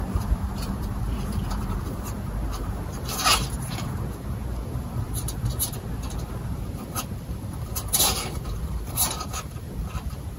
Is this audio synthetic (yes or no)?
yes